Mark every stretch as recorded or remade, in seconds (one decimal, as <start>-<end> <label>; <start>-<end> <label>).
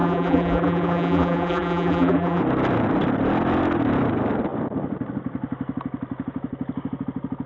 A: 0.0-2.4 remade; 2.4-7.5 recorded